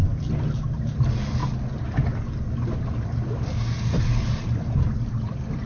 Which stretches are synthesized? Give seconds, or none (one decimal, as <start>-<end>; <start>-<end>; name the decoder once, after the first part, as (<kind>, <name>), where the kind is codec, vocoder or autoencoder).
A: none